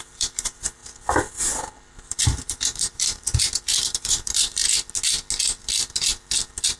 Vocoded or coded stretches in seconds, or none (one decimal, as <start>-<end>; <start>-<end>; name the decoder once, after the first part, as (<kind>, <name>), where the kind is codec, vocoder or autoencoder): 0.0-0.8 (vocoder, BigVGAN v2); 1.9-4.6